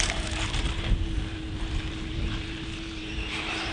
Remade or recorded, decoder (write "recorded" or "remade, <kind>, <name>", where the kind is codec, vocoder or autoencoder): remade, vocoder, BigVGAN v2